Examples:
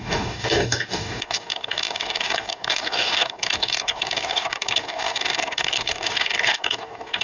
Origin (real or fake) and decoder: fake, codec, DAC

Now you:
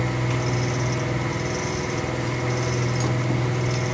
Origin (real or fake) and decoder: real